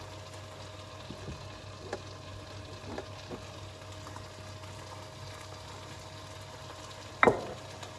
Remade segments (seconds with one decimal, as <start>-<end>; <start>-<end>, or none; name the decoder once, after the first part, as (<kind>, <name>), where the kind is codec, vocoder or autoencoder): none